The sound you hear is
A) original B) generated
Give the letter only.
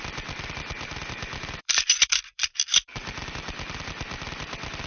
B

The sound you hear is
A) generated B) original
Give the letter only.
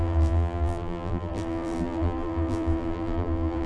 A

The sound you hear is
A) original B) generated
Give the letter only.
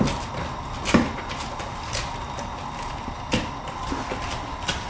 A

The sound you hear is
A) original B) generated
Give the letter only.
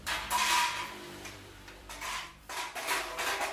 B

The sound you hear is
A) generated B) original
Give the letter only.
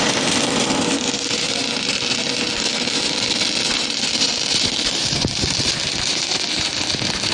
B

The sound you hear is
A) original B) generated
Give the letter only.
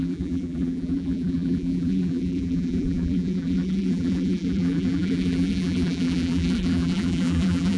B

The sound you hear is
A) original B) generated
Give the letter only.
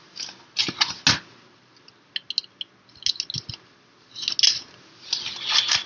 A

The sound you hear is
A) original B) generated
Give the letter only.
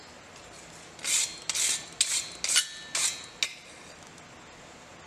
A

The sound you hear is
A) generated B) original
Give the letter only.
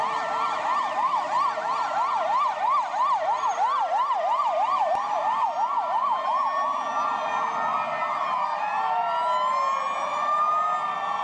B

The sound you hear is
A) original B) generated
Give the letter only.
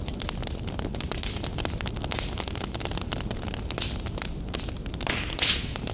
A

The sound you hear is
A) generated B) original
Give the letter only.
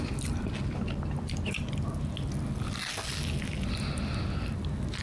B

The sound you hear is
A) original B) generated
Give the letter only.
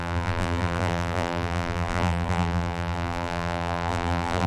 B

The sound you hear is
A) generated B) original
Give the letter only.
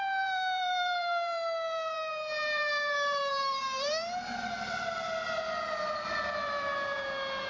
A